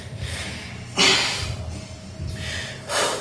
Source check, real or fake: real